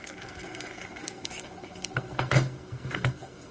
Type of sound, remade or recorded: remade